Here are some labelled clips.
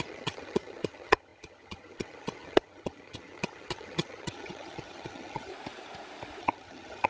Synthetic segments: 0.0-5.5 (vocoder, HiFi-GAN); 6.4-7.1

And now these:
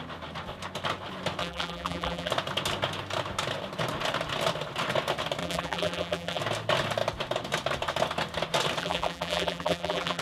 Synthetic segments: 1.4-2.3 (vocoder, BigVGAN v2); 5.4-6.4; 8.8-10.2

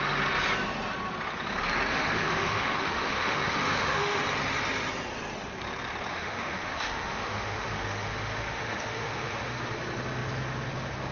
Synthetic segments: 1.9-4.2 (autoencoder, DAC-VAE); 6.1-9.7

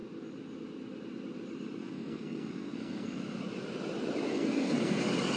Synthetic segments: 1.8-3.2 (codec, SNAC); 4.3-5.0

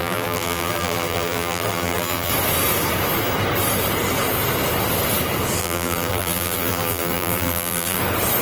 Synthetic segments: 0.0-2.3 (vocoder, BigVGAN v2); 5.6-8.0

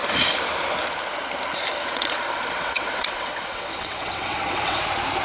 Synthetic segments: 1.7-4.8 (vocoder, WaveNeXt)

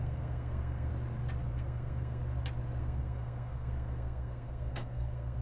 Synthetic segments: 0.0-0.9 (codec, SNAC); 1.4-2.2; 2.8-5.4